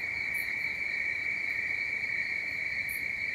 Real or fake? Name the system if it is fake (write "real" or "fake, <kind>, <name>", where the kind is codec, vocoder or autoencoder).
real